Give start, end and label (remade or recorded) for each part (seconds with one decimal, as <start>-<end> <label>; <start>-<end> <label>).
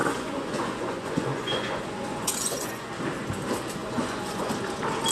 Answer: 0.0-2.9 remade; 2.9-3.8 recorded; 3.8-4.5 remade; 4.5-5.1 recorded